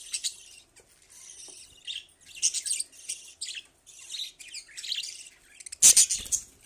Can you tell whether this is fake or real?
real